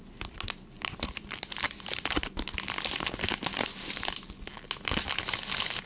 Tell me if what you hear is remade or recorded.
recorded